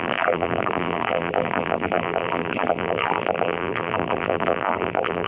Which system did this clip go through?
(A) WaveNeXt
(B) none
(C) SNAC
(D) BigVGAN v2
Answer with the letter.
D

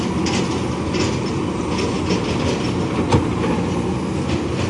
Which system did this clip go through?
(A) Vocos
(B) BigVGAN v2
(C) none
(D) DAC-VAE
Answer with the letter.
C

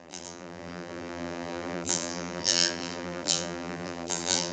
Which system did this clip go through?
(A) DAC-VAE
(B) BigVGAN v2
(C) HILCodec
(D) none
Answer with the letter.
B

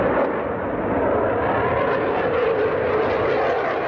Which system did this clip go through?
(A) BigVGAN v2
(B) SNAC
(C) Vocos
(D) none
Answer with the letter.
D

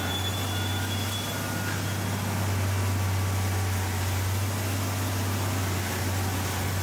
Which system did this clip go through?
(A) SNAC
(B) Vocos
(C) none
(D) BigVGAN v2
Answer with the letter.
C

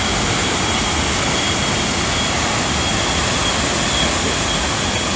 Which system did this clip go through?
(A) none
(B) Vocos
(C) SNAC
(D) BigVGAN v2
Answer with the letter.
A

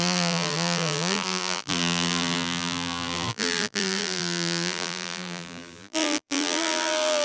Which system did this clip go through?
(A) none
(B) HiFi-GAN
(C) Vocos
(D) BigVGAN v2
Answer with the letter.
D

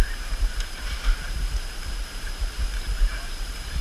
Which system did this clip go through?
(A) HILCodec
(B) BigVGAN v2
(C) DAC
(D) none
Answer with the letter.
B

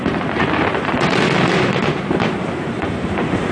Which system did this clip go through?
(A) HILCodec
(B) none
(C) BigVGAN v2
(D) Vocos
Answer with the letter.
C